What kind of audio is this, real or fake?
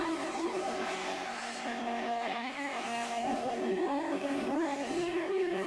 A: fake